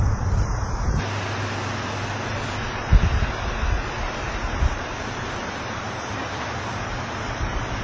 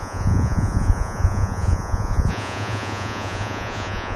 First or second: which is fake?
second